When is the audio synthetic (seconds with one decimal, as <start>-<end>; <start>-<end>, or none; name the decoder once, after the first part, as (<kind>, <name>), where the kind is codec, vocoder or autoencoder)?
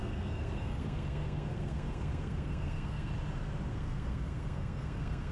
0.0-3.1 (codec, SNAC); 3.7-5.3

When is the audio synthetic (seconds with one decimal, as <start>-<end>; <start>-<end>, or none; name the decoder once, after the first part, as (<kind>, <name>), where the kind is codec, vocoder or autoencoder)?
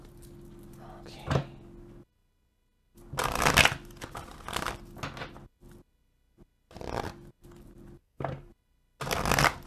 8.0-8.5 (codec, SNAC)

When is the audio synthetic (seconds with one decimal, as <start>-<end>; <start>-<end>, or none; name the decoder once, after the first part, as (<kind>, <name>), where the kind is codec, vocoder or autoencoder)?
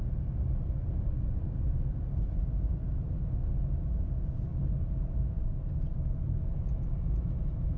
none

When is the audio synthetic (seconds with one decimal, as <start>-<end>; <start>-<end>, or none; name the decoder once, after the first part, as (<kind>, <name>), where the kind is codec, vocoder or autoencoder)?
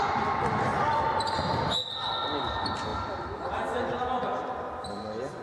none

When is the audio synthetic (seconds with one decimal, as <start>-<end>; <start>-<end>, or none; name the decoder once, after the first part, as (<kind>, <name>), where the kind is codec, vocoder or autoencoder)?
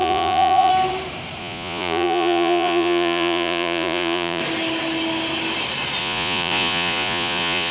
0.0-0.7 (vocoder, Vocos); 1.4-4.4; 6.0-7.7